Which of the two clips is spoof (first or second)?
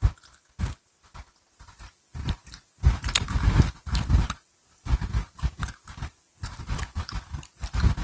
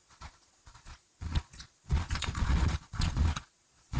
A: second